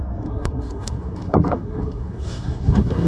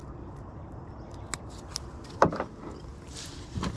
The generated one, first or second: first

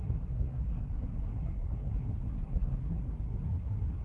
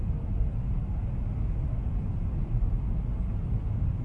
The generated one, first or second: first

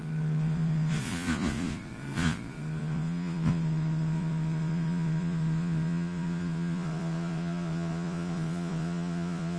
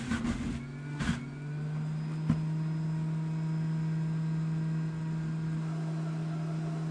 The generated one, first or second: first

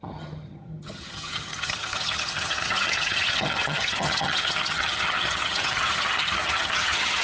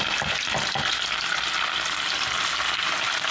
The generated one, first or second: first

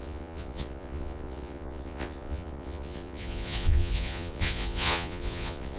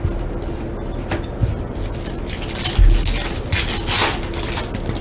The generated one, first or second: first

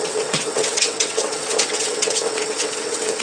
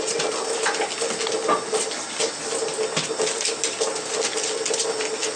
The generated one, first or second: first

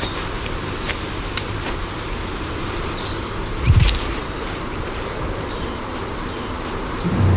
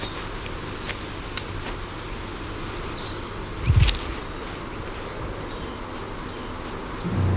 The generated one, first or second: first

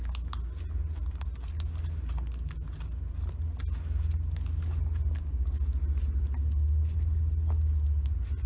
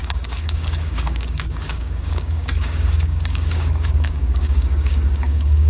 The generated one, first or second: second